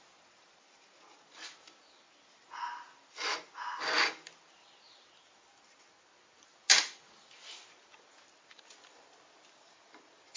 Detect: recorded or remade recorded